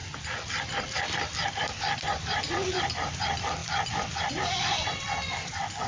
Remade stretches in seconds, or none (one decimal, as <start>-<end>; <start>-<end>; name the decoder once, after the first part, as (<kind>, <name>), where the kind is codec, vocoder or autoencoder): 0.0-3.6 (vocoder, BigVGAN v2); 4.2-5.9